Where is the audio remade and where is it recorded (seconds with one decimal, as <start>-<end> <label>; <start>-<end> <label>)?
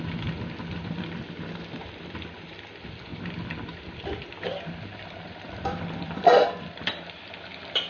0.0-3.1 recorded; 3.1-7.2 remade; 7.2-7.9 recorded